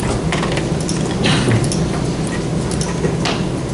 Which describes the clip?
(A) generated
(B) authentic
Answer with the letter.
B